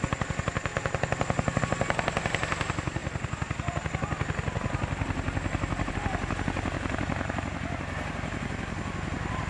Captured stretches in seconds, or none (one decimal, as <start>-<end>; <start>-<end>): 0.0-9.5